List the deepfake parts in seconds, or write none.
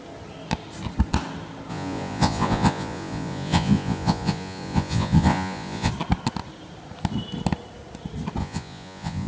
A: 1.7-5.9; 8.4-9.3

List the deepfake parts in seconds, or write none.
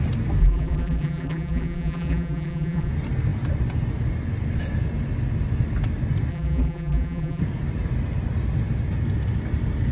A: 0.4-2.9; 6.3-7.4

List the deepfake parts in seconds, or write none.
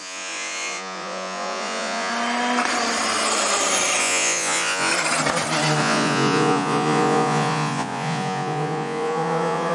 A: 0.0-2.1; 4.0-4.9; 5.8-9.7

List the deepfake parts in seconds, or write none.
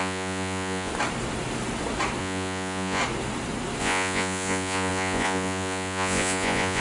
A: 0.0-0.9; 2.2-3.0; 3.8-6.8